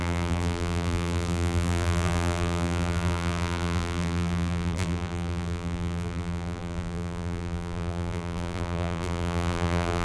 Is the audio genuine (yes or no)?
no